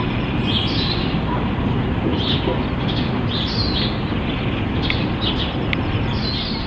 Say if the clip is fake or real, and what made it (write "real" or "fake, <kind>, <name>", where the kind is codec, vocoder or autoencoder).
real